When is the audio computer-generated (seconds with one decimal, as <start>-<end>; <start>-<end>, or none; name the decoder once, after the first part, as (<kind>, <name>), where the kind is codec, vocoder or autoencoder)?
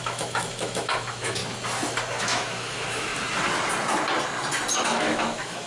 0.0-1.4 (autoencoder, DAC-VAE); 2.2-3.1; 4.8-5.7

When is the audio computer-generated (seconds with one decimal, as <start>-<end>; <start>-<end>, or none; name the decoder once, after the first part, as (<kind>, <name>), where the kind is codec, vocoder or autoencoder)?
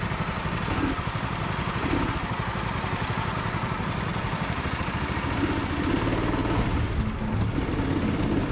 4.1-4.9 (vocoder, BigVGAN v2)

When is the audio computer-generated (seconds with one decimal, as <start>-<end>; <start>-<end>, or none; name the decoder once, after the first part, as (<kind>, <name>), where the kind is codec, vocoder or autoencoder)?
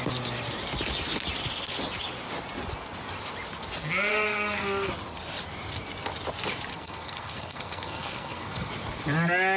4.1-4.9 (codec, SNAC); 6.7-8.7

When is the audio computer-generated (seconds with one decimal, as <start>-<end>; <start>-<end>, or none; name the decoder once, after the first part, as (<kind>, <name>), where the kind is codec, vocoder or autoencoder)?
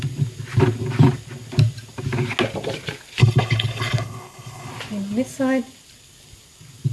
3.2-4.7 (codec, HILCodec)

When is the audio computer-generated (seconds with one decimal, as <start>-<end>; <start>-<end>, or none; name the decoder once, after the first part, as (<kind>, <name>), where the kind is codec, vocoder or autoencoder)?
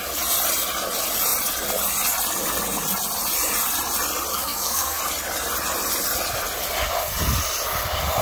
4.3-5.0 (codec, SNAC)